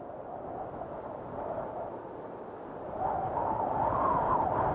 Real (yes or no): yes